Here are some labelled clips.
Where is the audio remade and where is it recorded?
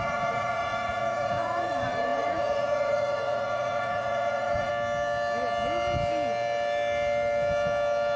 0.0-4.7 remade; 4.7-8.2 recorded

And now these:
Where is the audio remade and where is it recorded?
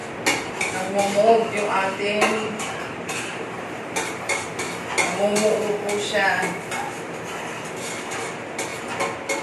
0.0-2.3 recorded; 2.3-4.7 remade; 4.7-9.4 recorded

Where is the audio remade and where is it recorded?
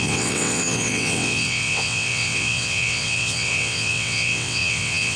0.0-5.2 remade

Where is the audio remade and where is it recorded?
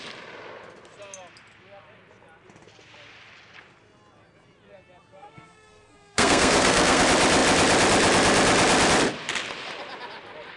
0.0-5.1 recorded; 5.1-7.0 remade; 7.0-10.6 recorded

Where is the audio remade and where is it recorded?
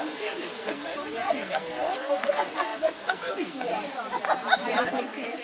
0.0-3.7 remade; 3.7-4.9 recorded; 4.9-5.4 remade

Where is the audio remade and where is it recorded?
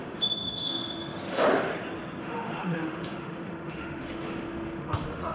0.0-1.7 remade; 1.7-2.2 recorded; 2.2-5.3 remade